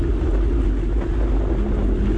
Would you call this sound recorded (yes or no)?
yes